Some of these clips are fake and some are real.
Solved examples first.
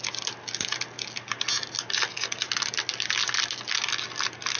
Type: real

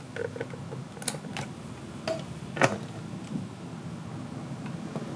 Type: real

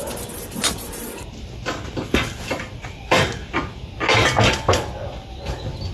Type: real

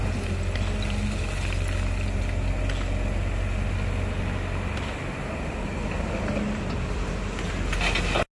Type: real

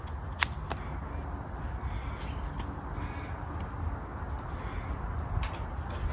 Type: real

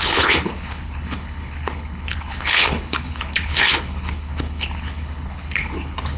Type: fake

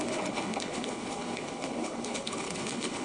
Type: fake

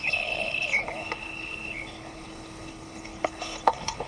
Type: fake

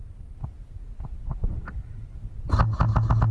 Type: real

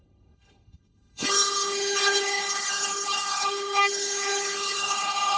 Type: fake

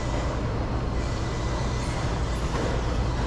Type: real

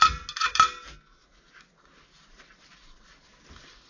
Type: real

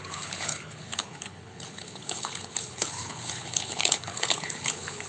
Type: fake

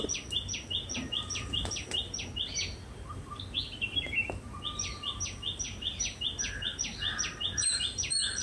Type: real